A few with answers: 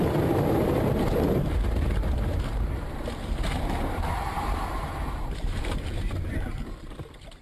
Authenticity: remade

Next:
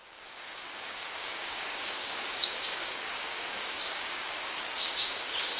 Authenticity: remade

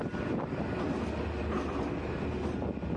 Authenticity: recorded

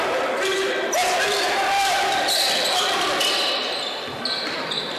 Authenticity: recorded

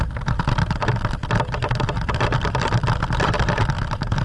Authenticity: recorded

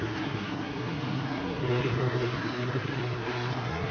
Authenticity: remade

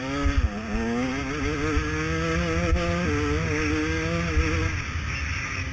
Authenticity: recorded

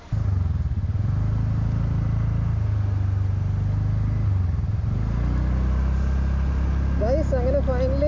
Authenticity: recorded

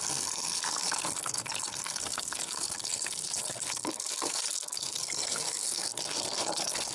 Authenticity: remade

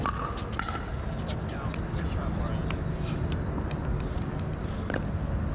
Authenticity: recorded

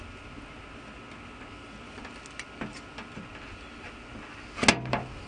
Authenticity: recorded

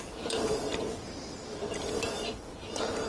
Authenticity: recorded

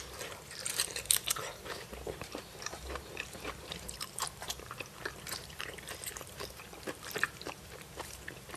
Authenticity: remade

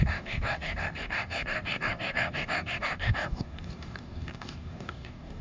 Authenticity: remade